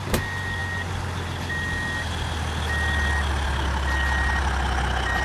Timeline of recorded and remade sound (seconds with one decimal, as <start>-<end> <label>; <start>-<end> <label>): 0.0-5.2 recorded